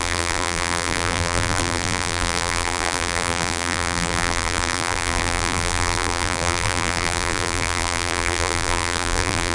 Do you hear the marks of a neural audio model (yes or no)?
yes